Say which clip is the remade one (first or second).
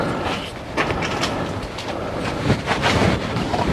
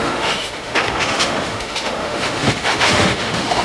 second